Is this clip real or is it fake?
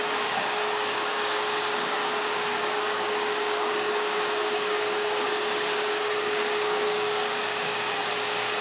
fake